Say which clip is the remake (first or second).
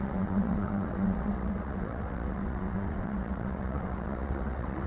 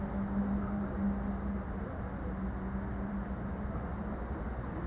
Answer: first